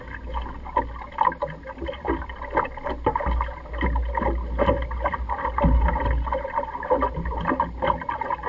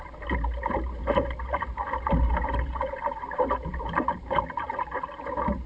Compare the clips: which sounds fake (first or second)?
second